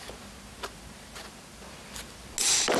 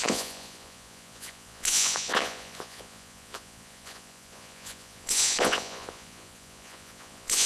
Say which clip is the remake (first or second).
second